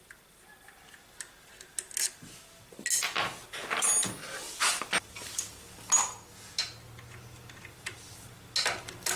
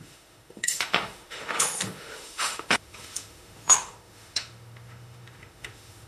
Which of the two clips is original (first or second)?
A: first